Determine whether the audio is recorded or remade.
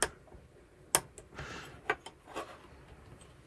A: recorded